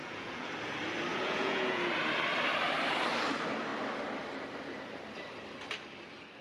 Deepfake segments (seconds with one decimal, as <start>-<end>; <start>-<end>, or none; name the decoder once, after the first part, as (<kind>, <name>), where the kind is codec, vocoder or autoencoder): 0.0-0.5 (vocoder, Vocos); 1.1-1.9